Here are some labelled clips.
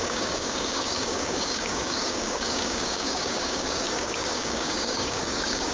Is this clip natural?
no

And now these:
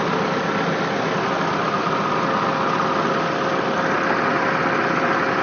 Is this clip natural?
yes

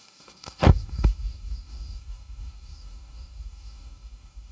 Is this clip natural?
no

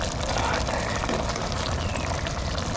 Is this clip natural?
yes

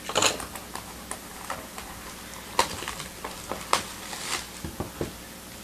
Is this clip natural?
yes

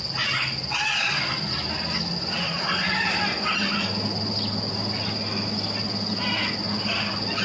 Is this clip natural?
yes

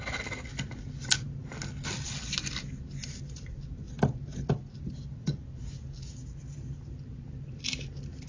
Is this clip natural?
yes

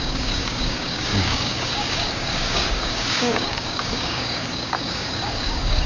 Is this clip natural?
no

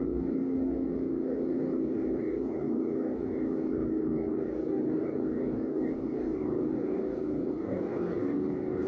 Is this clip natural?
no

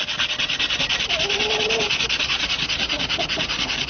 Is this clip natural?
yes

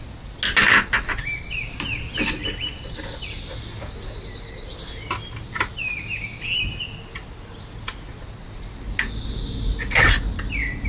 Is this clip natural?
yes